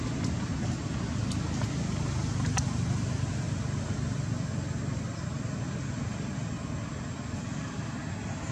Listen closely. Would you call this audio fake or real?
real